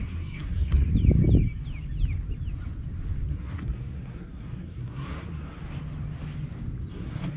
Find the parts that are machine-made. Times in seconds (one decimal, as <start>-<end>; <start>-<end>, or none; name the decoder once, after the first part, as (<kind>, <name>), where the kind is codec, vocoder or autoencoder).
0.0-0.9 (codec, SNAC); 3.3-5.6; 6.9-7.4